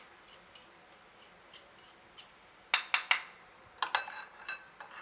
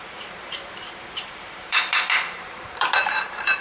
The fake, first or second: second